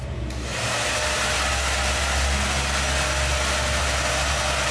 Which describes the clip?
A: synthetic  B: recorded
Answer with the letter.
B